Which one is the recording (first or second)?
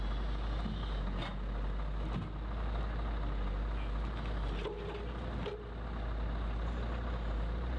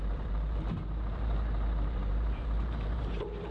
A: first